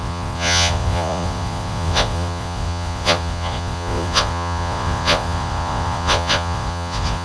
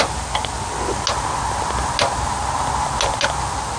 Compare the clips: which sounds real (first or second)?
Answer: second